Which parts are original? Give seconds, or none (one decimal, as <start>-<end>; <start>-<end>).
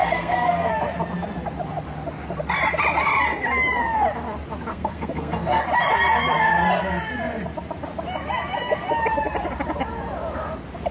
0.7-4.7; 5.6-10.9